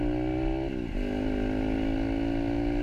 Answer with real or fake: real